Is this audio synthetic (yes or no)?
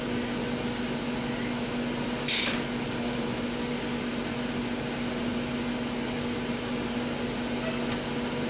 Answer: no